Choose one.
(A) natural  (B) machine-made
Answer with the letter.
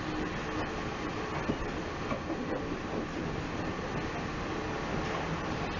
A